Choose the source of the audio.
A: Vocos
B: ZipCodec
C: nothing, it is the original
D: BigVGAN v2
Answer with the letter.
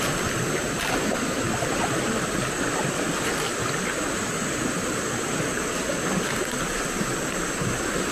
C